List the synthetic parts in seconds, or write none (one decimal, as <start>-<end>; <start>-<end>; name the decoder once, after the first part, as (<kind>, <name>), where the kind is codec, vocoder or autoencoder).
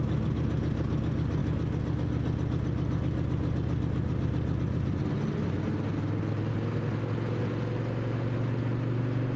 none